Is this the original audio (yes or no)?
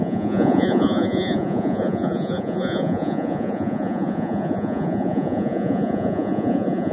no